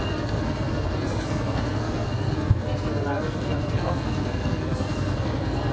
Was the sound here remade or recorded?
remade